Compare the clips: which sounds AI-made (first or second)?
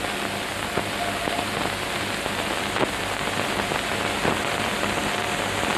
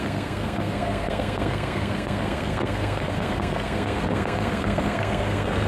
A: second